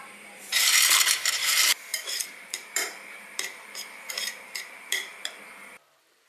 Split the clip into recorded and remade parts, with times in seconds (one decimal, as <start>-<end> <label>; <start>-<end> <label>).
0.0-5.1 remade; 5.1-6.3 recorded